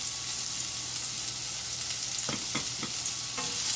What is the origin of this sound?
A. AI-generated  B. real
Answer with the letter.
B